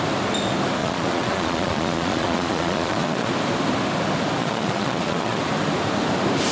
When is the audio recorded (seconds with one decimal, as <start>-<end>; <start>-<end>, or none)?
0.0-0.8; 3.3-4.4; 5.4-6.5